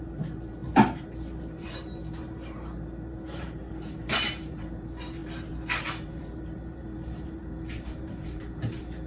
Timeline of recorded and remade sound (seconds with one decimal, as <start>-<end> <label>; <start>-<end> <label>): 0.0-9.1 remade